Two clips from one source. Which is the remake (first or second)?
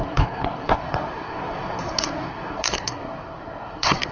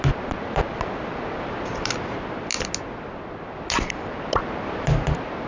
first